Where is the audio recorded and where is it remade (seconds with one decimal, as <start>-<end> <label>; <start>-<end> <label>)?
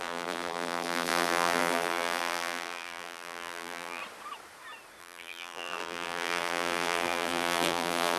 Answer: 0.0-4.0 remade; 4.0-5.0 recorded; 5.0-8.2 remade